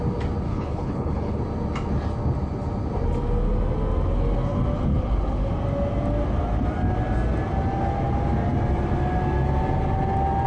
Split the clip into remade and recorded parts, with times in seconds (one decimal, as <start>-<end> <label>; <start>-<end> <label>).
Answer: 0.0-0.5 recorded; 0.5-1.4 remade; 1.4-4.9 recorded; 4.9-5.5 remade; 5.5-10.5 recorded